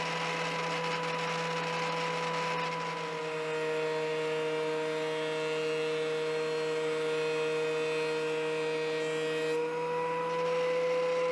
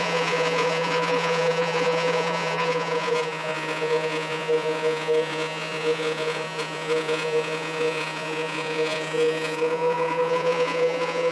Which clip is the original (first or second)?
first